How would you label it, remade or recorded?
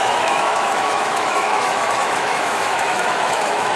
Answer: remade